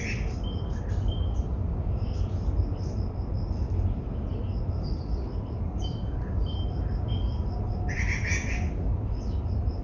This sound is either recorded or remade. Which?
recorded